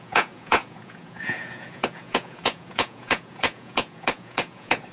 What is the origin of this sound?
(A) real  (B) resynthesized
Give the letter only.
B